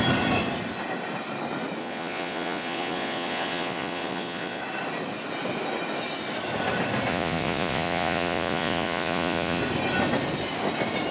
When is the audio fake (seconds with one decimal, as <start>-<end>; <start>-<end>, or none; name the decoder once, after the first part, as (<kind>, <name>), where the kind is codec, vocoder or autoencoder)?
1.8-4.6 (vocoder, Vocos); 7.1-9.6